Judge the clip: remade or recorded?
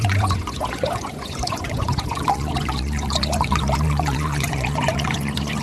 remade